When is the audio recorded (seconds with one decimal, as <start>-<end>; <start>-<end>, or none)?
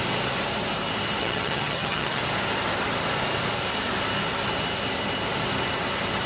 0.0-1.2; 2.2-6.3